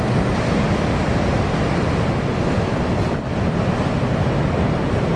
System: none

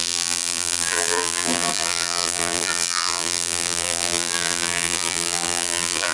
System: vocoder, BigVGAN v2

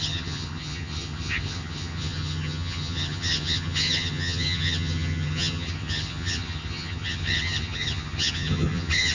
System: vocoder, HiFi-GAN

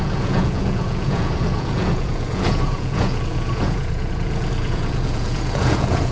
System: vocoder, Vocos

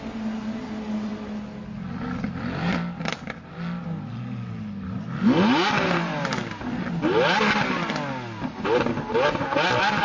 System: none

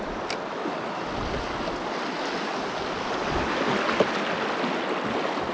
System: none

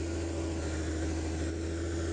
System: none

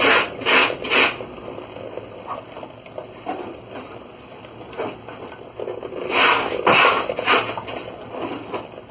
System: none